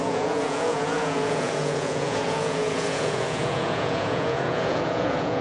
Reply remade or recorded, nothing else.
remade